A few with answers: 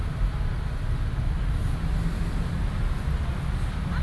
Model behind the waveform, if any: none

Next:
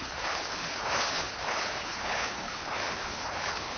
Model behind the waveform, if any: codec, HILCodec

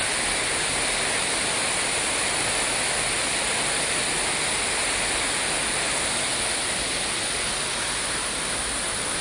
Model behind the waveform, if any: none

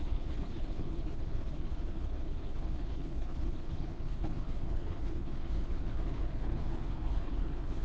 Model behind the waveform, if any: codec, HILCodec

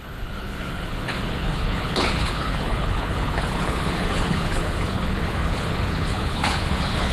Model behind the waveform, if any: codec, HILCodec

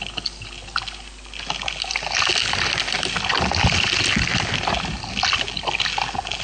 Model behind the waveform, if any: none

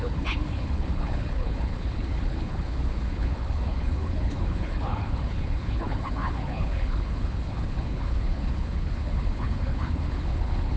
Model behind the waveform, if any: codec, HILCodec